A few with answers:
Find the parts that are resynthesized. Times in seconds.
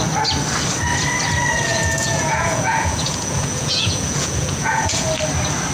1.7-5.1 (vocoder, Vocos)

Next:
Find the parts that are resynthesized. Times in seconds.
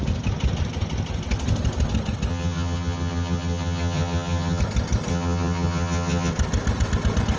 2.3-4.6 (vocoder, HiFi-GAN); 5.1-6.3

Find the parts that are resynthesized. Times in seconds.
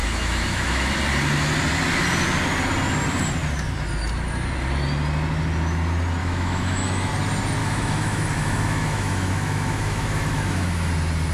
0.0-0.9 (autoencoder, DAC-VAE); 6.2-7.1; 7.6-10.9